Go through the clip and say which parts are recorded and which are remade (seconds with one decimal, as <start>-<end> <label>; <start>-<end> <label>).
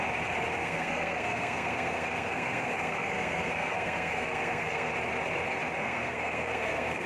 0.0-0.6 recorded; 0.6-4.9 remade; 4.9-5.8 recorded; 5.8-7.1 remade